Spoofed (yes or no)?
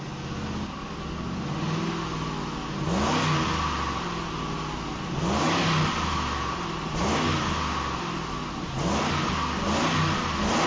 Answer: no